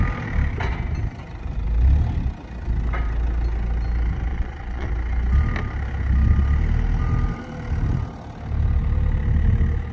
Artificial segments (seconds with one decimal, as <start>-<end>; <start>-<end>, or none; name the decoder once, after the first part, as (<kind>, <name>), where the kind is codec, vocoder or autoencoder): 4.3-4.9 (vocoder, Vocos)